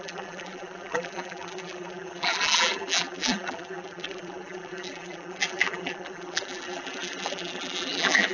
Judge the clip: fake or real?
fake